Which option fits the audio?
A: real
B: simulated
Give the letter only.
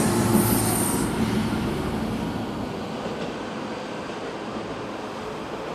A